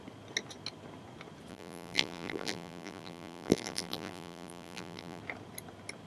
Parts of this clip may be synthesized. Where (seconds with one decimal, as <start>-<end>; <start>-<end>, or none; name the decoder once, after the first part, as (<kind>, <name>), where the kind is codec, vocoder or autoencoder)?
1.5-5.2 (vocoder, BigVGAN v2)